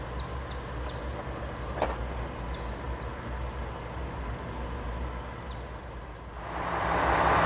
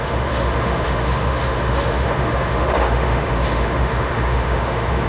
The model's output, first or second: second